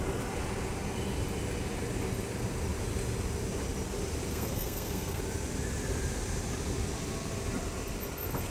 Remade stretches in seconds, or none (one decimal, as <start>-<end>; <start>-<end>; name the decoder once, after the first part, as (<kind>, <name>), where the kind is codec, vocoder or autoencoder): 4.3-5.2 (codec, SNAC)

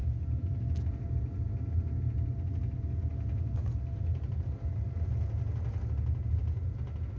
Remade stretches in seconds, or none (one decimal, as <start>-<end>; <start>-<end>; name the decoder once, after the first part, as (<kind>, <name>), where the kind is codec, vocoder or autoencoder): none

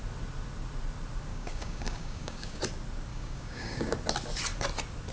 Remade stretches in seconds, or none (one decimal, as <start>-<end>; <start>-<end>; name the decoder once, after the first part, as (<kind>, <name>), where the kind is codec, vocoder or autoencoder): 1.3-2.6 (codec, DAC); 3.1-3.9

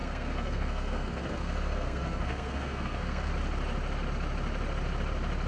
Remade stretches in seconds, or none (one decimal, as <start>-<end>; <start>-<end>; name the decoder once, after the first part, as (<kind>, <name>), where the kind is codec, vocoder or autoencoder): 0.0-3.3 (codec, SNAC)

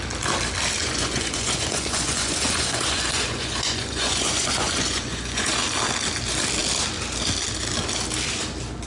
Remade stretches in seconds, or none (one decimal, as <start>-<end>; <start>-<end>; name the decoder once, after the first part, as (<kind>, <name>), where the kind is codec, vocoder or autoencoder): 0.8-5.6 (vocoder, Vocos)

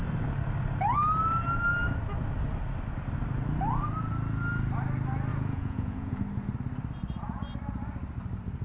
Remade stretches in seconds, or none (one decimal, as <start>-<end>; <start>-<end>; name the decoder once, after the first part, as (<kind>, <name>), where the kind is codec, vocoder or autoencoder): 5.3-6.2 (vocoder, Vocos)

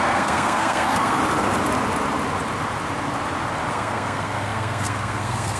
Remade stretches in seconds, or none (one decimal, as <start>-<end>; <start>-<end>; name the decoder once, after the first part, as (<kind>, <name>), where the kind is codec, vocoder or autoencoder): 0.0-1.2 (codec, SNAC); 3.7-5.6